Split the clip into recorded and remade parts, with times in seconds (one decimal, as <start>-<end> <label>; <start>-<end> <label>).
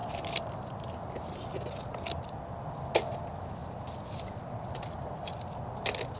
0.0-6.2 recorded